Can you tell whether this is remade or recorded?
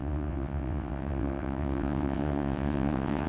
remade